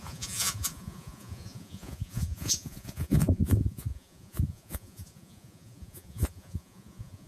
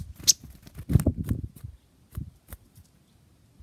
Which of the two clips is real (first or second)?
second